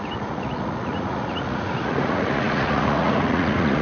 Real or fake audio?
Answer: fake